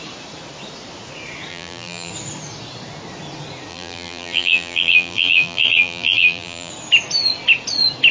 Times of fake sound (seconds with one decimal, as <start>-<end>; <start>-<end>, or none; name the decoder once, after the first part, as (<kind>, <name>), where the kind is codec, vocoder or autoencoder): 1.5-2.1 (vocoder, BigVGAN v2); 3.7-6.7